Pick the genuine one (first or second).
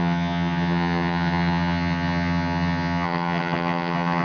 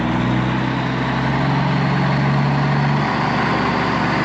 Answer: second